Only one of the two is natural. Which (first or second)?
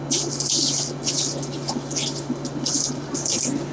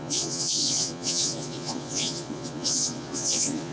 first